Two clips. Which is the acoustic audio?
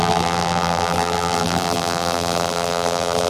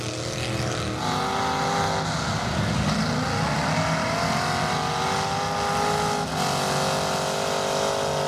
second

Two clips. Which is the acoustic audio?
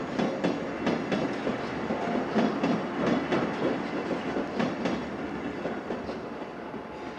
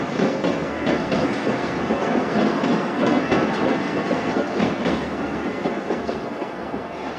first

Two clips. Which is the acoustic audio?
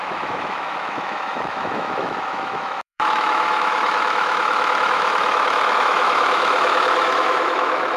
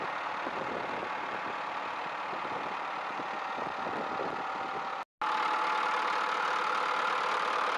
second